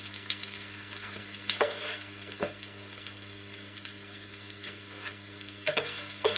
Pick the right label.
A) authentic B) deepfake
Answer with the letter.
B